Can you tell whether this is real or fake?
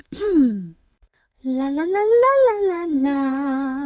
fake